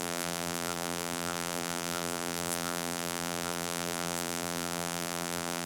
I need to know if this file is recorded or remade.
remade